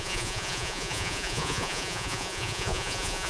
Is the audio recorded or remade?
remade